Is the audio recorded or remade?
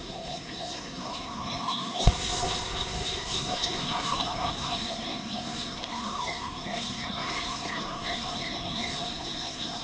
remade